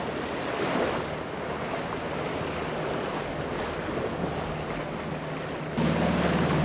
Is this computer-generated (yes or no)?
no